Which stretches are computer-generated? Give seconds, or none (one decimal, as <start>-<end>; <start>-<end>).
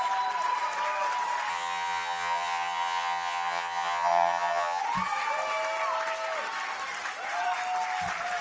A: 1.5-4.8